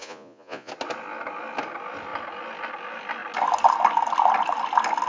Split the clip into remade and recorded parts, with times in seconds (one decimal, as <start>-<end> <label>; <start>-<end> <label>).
0.0-0.7 remade; 0.7-5.1 recorded